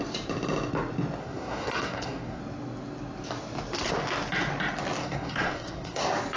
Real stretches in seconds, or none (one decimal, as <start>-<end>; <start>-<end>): 0.0-1.2; 2.4-5.0; 6.0-6.4

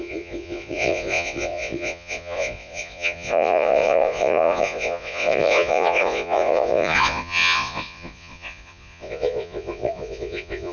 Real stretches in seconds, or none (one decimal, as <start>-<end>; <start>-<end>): none

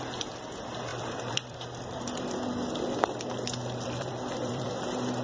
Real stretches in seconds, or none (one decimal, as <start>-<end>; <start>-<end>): 0.0-0.9; 2.2-3.6; 4.7-5.2

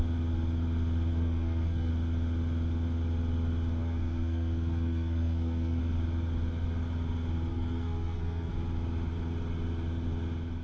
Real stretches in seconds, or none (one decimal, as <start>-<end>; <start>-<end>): 0.0-1.1; 1.9-3.8; 5.8-7.5; 8.5-10.6